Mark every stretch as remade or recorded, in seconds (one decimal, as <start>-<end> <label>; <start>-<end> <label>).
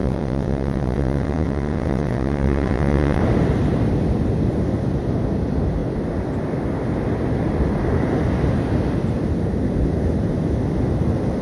0.0-3.2 remade; 3.2-11.4 recorded